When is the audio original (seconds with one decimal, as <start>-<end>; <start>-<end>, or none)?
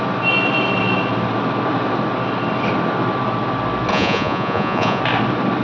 0.0-3.9; 5.0-5.6